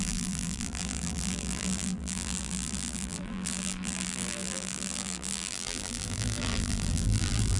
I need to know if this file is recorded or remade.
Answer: remade